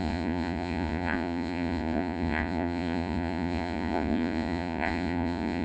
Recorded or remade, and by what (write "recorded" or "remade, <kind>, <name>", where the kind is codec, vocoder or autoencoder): remade, vocoder, Vocos